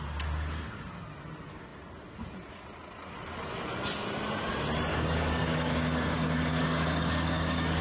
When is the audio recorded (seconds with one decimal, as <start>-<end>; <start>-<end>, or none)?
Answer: 0.0-4.9